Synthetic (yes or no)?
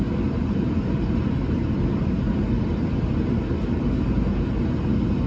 no